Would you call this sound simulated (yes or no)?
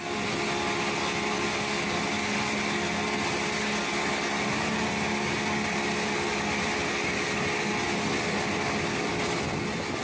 no